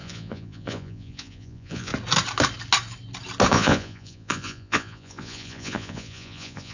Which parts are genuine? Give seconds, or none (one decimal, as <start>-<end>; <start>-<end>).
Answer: 1.9-3.5